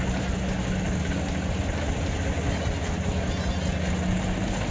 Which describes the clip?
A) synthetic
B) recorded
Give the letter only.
B